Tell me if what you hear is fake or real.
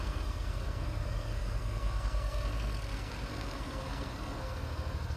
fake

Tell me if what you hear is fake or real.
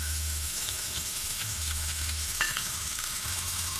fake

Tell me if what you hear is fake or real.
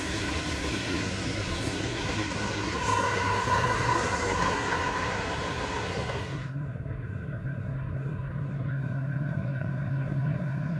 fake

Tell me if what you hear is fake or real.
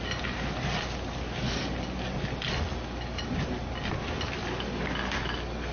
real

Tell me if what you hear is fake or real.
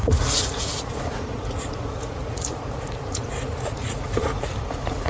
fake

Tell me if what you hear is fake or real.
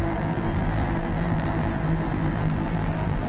fake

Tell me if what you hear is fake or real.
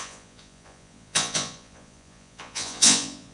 fake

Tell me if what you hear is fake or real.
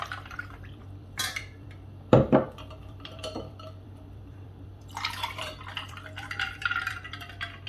fake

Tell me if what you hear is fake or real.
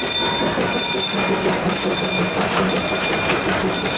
real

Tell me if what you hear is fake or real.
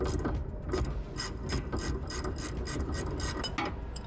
real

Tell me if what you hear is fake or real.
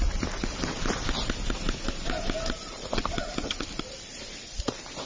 real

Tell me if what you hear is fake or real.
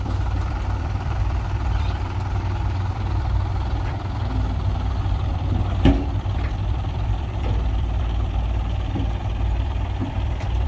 fake